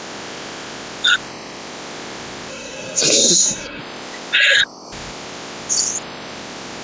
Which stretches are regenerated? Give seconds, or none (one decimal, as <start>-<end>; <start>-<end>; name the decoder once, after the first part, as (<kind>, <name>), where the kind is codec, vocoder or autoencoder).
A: 2.5-3.8 (codec, SNAC)